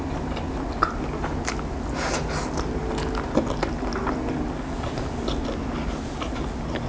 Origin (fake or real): real